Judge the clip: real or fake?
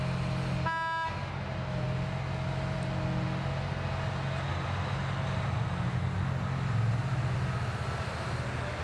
real